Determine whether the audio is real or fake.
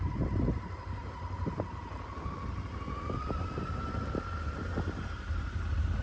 real